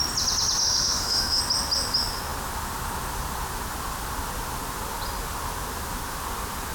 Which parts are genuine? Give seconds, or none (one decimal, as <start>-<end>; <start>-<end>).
0.0-0.6; 1.4-6.7